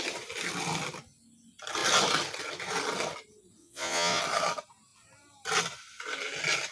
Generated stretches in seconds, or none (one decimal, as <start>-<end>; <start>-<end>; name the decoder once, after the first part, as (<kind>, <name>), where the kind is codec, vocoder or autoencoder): 3.6-4.2 (vocoder, Vocos)